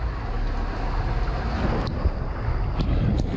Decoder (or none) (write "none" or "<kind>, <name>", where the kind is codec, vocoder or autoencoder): none